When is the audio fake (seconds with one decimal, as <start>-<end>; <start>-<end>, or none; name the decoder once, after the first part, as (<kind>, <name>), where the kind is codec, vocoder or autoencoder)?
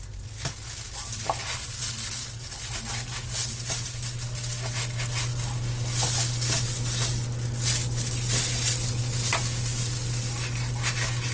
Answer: none